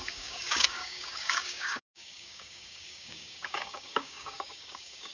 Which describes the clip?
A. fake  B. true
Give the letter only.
A